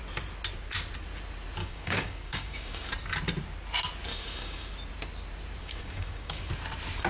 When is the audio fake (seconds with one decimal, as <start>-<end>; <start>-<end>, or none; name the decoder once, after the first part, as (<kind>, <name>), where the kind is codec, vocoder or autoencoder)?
1.6-2.9 (codec, DAC); 4.1-4.7; 5.6-6.5